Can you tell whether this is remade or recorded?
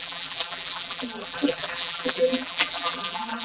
remade